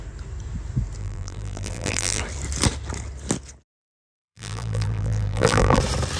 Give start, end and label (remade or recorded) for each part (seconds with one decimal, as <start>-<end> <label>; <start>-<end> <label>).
0.0-1.0 recorded; 1.0-2.2 remade; 2.2-3.8 recorded; 3.8-5.8 remade; 5.8-6.2 recorded